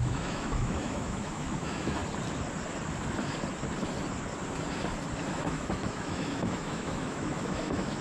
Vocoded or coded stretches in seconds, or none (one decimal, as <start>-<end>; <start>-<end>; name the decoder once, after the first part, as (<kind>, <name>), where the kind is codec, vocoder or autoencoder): 0.0-2.0 (autoencoder, DAC-VAE); 5.3-8.0